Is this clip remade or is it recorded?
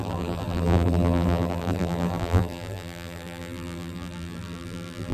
remade